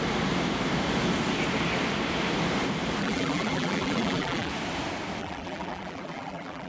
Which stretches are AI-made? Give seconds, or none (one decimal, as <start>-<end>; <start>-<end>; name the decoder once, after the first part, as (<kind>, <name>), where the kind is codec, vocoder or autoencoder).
3.0-4.5 (vocoder, BigVGAN v2); 5.2-6.7